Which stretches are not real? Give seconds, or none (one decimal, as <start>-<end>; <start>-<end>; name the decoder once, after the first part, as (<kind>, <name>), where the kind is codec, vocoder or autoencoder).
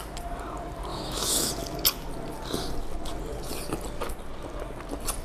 0.9-1.5 (autoencoder, DAC-VAE)